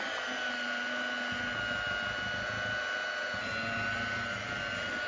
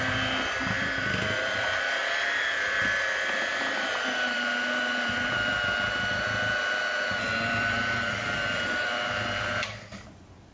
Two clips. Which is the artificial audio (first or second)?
second